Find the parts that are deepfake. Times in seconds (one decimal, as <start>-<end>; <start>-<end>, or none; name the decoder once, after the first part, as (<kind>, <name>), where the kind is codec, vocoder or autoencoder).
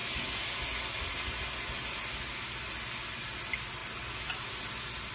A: none